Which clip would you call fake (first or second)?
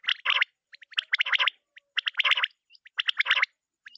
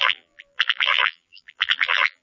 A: second